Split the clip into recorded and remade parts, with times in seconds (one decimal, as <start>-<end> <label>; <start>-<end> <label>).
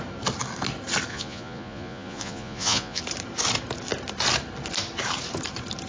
0.0-1.1 recorded; 1.1-3.0 remade; 3.0-5.9 recorded